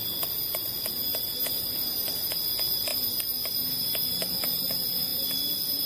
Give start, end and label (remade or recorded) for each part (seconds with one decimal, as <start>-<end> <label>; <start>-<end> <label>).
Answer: 0.0-5.9 recorded